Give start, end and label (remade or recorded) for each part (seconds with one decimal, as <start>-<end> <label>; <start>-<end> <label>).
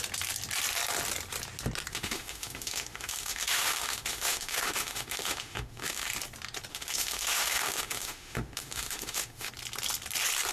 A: 0.0-1.9 recorded; 1.9-6.1 remade; 6.1-6.7 recorded; 6.7-9.5 remade; 9.5-10.5 recorded